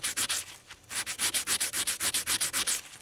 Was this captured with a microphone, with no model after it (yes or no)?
yes